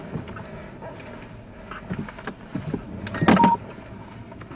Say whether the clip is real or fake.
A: real